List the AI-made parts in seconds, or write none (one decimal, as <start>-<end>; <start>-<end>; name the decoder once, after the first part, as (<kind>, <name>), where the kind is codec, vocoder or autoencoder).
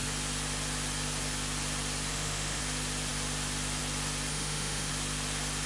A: 2.1-2.6 (autoencoder, DAC-VAE); 4.3-4.9